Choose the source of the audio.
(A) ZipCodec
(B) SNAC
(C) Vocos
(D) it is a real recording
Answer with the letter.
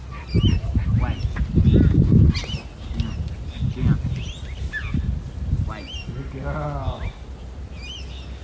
D